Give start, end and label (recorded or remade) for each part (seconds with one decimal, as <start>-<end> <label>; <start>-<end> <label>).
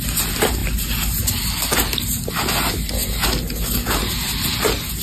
0.0-5.0 recorded